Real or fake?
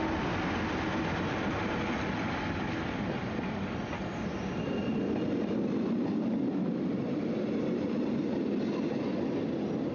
real